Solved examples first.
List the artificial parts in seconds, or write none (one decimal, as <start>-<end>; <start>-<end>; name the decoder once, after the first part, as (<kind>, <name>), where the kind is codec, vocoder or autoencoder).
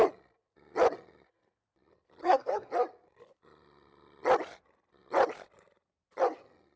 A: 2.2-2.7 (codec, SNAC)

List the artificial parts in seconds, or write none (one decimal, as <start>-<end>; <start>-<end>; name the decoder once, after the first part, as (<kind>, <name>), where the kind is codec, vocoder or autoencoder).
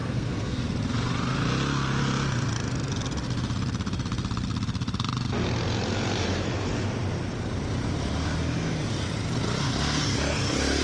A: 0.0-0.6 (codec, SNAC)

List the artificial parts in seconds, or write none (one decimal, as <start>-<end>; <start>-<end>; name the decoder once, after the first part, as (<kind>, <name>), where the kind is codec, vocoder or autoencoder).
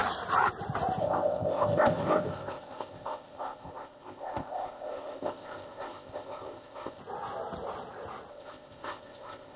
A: 1.0-7.0 (codec, ZipCodec); 8.3-9.6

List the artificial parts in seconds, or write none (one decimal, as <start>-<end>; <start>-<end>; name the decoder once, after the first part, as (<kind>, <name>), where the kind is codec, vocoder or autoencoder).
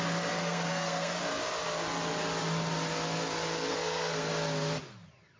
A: 0.4-1.2 (codec, SNAC); 3.7-4.3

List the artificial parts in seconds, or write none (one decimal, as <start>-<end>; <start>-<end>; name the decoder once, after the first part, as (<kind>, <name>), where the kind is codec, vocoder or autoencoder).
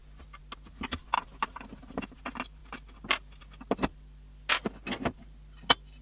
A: none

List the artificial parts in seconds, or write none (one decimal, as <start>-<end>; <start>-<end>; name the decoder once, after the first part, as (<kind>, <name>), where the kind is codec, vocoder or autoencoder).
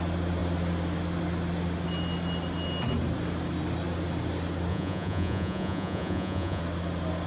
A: 4.7-6.6 (vocoder, Vocos)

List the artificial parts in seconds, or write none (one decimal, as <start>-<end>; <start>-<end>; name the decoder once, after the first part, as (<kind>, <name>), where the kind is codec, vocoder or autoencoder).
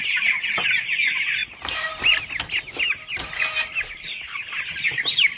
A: none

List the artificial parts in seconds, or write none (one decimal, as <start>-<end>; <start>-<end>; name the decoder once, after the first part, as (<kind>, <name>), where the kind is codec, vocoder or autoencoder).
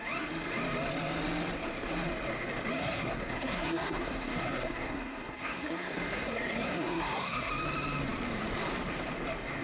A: 2.8-7.5 (codec, SNAC)